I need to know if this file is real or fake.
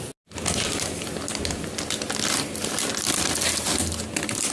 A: real